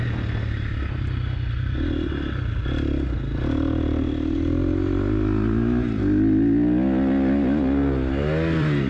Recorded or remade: recorded